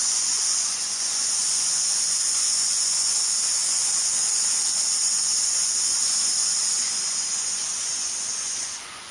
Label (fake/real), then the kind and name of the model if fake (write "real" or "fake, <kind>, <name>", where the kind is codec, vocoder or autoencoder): fake, vocoder, Vocos